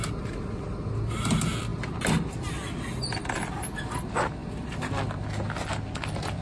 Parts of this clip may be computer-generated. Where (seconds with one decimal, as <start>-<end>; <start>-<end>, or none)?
none